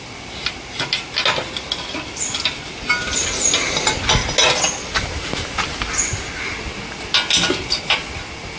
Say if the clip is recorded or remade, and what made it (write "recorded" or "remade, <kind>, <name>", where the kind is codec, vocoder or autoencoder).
recorded